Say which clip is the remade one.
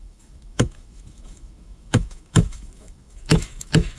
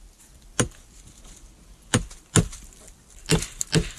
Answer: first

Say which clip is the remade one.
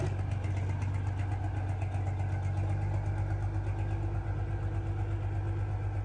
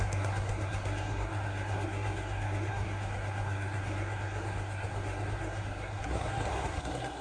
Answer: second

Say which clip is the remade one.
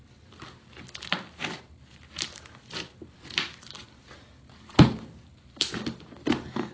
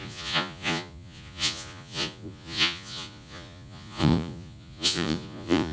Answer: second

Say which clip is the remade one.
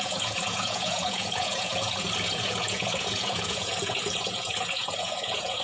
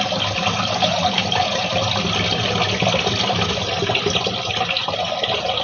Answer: first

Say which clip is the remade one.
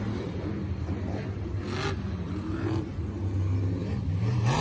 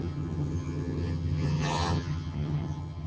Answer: second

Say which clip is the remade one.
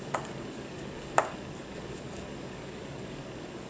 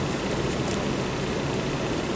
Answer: first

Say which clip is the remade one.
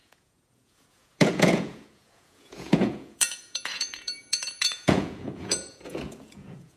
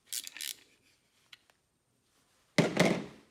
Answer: first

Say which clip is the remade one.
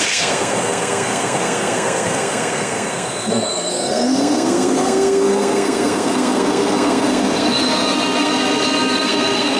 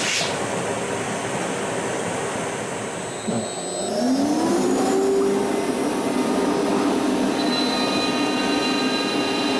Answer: first